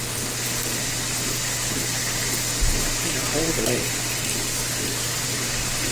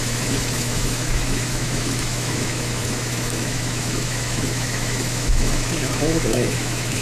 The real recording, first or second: first